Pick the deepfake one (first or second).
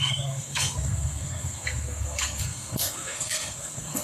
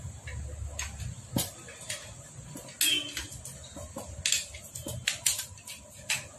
first